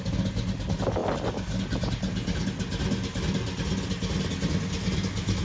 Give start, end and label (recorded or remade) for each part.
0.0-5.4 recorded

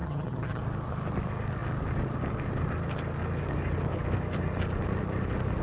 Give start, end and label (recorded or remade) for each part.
0.0-0.6 remade; 0.6-5.6 recorded

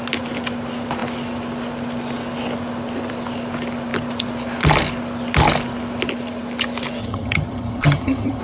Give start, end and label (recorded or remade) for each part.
0.0-7.0 recorded; 7.0-8.4 remade

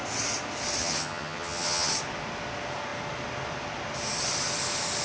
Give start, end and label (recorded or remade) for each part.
0.0-0.8 recorded; 0.8-1.9 remade; 1.9-5.0 recorded

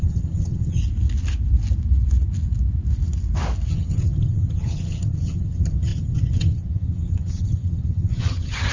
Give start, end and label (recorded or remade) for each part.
0.0-0.8 remade; 0.8-3.7 recorded; 3.7-8.7 remade

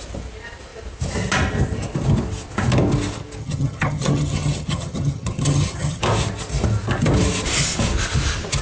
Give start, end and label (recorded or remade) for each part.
0.0-3.4 recorded; 3.4-6.0 remade; 6.0-8.6 recorded

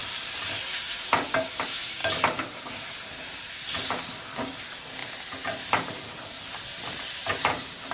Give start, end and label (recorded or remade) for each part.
0.0-7.9 recorded

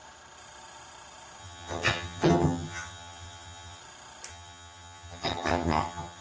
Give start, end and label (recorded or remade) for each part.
0.0-1.4 recorded; 1.4-3.8 remade; 3.8-4.3 recorded; 4.3-6.2 remade